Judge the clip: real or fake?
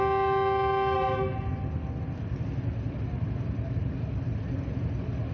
real